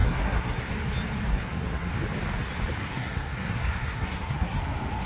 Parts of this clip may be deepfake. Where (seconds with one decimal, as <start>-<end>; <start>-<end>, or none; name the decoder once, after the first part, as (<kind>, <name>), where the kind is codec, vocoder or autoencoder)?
0.0-0.7 (codec, SNAC); 1.3-1.9; 2.8-4.6